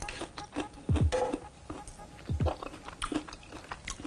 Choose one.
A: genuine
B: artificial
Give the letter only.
A